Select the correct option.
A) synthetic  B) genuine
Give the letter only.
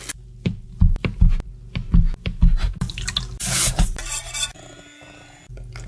B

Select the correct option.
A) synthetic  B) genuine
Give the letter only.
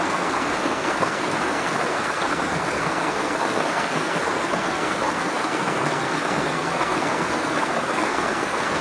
A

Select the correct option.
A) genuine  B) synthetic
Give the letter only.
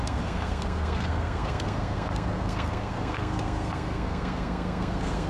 B